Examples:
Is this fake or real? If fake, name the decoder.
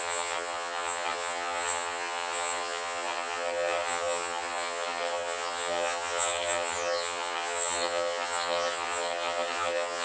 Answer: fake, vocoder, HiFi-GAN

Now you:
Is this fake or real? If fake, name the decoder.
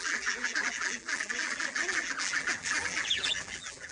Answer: fake, vocoder, BigVGAN v2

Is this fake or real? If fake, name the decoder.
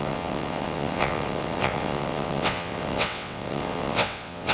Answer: fake, vocoder, WaveNeXt